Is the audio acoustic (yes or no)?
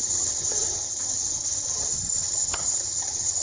no